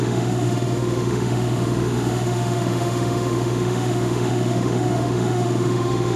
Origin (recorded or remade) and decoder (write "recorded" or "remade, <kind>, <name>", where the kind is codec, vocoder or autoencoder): remade, autoencoder, DAC-VAE